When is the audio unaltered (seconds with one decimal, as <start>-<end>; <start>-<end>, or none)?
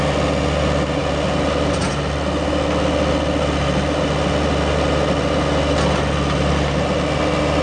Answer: 0.0-7.6